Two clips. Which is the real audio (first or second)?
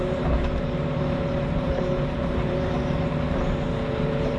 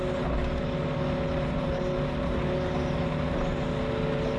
second